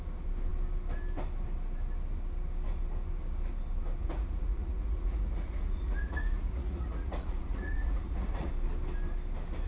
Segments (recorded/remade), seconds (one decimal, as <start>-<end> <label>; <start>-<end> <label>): 0.0-4.0 recorded; 4.0-8.5 remade; 8.5-9.7 recorded